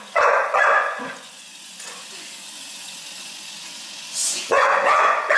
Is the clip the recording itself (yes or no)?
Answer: no